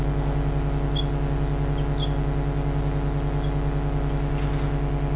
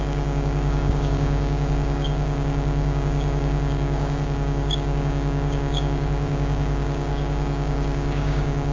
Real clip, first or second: first